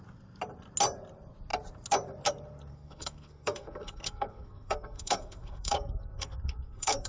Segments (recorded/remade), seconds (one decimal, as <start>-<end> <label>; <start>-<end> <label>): 0.0-2.7 recorded; 2.7-7.1 remade